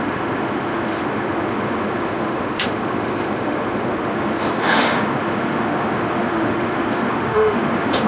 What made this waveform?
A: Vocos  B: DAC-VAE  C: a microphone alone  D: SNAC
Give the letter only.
B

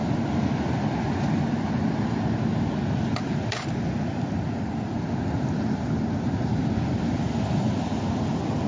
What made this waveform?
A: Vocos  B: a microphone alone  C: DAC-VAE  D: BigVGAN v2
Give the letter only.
B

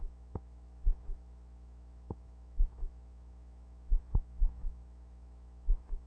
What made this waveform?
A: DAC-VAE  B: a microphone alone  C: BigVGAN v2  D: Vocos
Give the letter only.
A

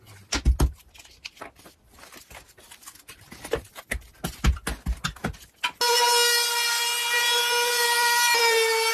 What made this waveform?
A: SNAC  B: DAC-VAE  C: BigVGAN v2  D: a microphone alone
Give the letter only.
D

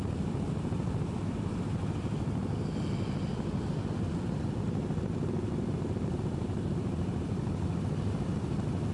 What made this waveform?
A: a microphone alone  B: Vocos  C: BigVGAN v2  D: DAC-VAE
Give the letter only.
A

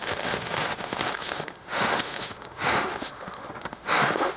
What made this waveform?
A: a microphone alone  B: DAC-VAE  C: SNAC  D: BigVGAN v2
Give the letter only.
B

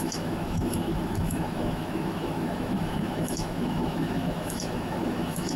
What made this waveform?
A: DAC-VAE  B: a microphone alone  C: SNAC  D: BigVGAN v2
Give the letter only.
A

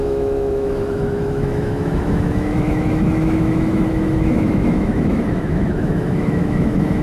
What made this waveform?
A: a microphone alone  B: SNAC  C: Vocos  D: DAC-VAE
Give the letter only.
D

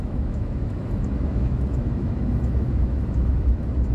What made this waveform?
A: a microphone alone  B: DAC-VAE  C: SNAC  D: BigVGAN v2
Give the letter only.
B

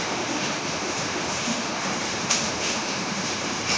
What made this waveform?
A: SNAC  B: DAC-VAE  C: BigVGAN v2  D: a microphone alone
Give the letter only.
B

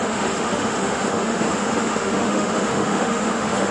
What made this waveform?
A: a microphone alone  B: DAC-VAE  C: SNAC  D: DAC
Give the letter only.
B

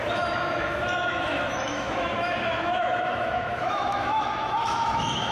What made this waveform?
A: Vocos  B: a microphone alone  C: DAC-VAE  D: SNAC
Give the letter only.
C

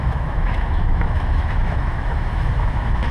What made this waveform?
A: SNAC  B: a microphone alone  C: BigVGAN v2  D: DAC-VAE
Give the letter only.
D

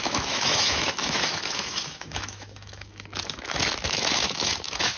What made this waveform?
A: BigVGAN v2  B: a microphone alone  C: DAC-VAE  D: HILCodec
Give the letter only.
C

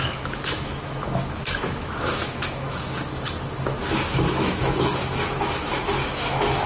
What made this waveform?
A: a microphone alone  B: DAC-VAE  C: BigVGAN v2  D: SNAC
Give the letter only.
B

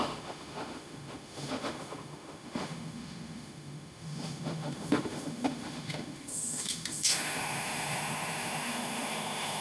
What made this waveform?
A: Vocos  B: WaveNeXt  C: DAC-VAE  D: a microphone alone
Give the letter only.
C